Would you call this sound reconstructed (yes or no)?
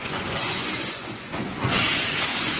yes